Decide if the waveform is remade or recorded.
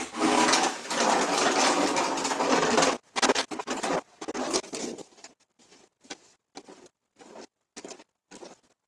recorded